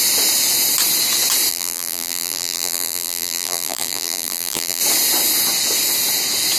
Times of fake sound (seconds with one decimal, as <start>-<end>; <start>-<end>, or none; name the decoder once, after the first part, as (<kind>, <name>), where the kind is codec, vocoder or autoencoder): 1.5-4.8 (vocoder, BigVGAN v2)